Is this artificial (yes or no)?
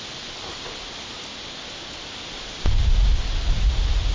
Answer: no